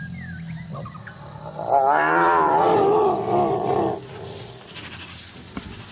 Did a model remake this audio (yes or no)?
no